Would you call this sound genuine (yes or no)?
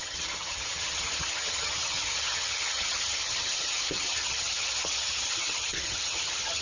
no